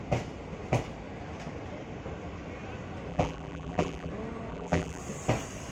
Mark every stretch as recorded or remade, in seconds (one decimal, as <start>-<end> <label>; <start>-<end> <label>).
0.0-3.1 recorded; 3.1-4.1 remade; 4.1-4.5 recorded; 4.5-5.0 remade; 5.0-5.7 recorded